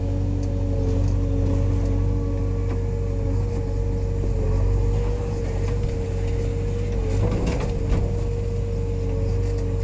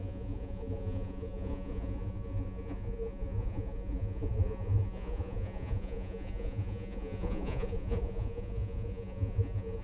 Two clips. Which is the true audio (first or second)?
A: first